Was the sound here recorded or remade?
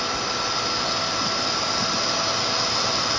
recorded